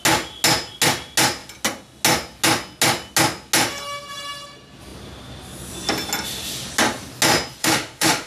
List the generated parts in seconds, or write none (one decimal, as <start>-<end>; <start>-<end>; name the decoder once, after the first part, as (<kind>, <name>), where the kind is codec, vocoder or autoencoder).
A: 7.6-8.3 (autoencoder, DAC-VAE)